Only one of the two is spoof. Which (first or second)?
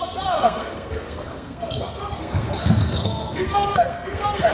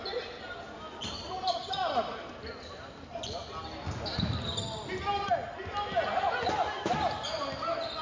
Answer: first